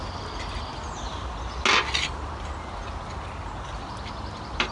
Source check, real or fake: real